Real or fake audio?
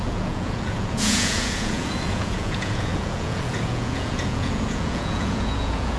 fake